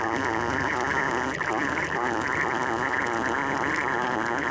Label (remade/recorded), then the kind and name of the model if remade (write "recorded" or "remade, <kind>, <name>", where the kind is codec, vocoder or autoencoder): recorded